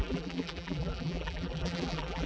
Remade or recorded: remade